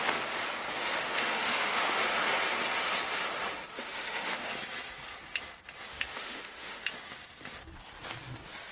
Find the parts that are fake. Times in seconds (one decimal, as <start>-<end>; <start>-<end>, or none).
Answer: 0.8-2.0; 3.7-4.5; 5.9-6.8